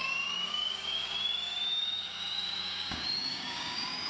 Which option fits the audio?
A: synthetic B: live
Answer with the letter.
A